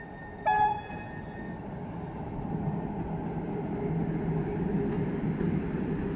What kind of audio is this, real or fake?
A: real